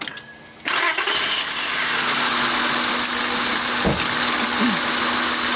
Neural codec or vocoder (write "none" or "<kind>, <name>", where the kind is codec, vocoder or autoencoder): none